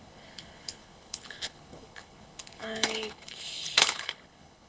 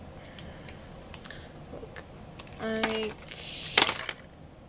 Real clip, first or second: second